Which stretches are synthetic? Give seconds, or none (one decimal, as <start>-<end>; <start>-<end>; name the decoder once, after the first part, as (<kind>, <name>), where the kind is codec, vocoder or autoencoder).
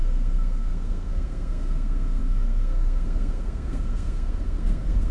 0.0-5.1 (codec, SNAC)